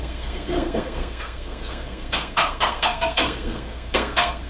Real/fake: fake